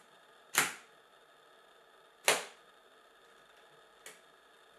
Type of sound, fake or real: real